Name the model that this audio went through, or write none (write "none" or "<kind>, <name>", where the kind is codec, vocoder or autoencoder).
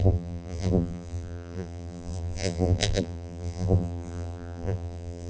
vocoder, BigVGAN v2